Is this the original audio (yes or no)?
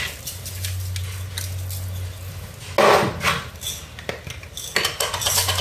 yes